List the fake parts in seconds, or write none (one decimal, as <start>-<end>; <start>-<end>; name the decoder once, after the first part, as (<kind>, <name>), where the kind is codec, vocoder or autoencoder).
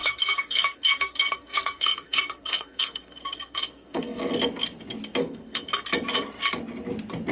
0.0-4.2 (codec, SNAC); 5.2-5.7